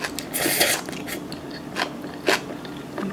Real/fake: real